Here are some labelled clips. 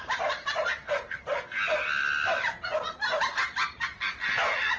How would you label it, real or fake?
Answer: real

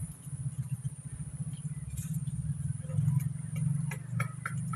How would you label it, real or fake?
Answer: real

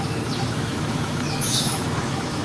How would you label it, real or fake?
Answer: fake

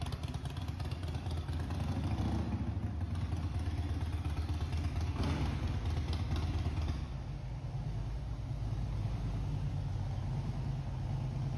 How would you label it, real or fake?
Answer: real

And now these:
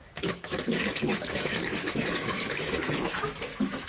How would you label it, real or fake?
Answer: fake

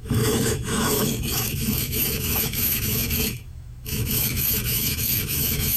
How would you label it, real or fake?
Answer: fake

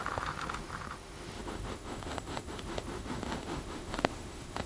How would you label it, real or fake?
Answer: fake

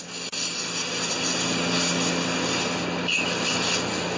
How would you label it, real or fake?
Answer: real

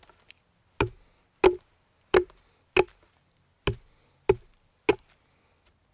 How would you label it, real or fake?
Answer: real